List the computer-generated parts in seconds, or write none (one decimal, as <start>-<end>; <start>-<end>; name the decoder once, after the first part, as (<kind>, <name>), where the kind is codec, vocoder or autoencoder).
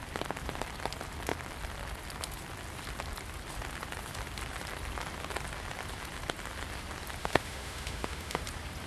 7.2-8.4 (autoencoder, DAC-VAE)